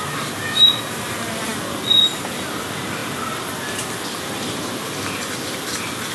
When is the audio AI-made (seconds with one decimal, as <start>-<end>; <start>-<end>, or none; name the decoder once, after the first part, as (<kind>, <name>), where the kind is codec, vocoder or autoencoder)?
none